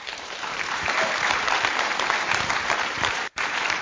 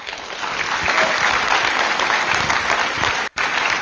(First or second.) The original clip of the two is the second